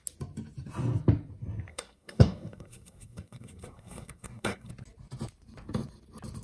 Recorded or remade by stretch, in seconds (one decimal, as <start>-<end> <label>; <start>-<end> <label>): 0.0-1.7 recorded; 1.7-4.7 remade; 4.7-6.4 recorded